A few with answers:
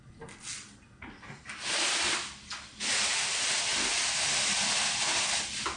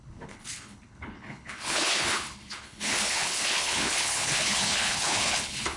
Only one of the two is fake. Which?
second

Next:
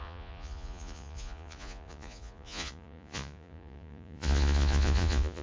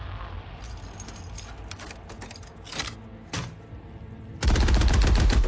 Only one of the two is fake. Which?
first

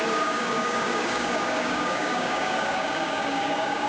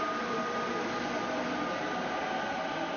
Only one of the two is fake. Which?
first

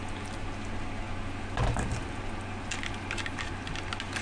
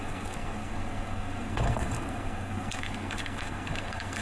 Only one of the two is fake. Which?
second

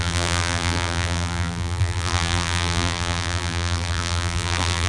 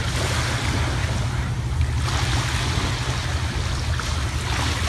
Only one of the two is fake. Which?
first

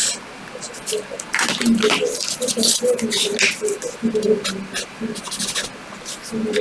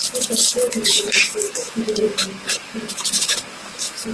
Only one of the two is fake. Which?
second